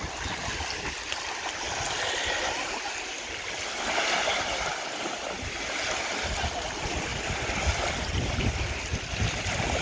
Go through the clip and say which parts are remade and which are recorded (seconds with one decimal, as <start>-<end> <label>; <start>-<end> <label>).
0.0-9.8 recorded

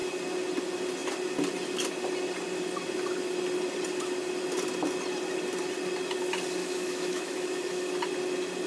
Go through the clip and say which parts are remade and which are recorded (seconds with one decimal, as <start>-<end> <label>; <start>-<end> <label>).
0.0-6.6 recorded; 6.6-7.9 remade; 7.9-8.7 recorded

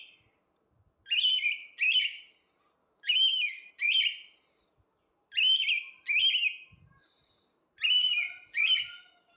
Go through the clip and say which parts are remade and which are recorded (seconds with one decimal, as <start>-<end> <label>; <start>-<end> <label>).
0.0-2.8 recorded; 2.8-3.7 remade; 3.7-9.4 recorded

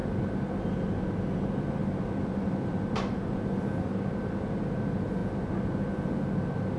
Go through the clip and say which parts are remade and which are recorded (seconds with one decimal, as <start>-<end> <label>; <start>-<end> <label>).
0.0-6.8 recorded

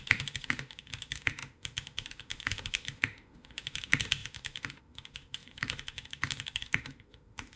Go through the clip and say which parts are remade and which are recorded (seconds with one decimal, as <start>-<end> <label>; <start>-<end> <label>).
0.0-7.6 remade

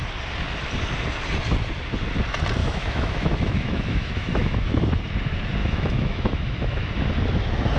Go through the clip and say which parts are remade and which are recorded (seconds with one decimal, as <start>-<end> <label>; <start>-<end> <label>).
0.0-2.6 recorded; 2.6-4.8 remade; 4.8-5.6 recorded; 5.6-6.9 remade; 6.9-7.8 recorded